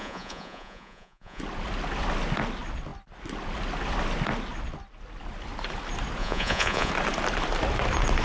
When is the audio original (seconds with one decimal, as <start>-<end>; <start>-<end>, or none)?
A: 1.4-6.2; 6.9-8.2